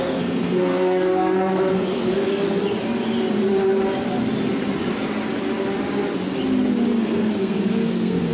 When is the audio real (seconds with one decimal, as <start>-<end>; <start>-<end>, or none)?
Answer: 2.4-6.9